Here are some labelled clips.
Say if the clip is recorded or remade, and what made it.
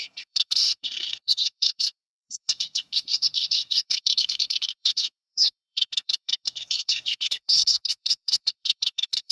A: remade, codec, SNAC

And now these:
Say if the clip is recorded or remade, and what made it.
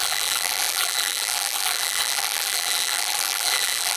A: remade, vocoder, BigVGAN v2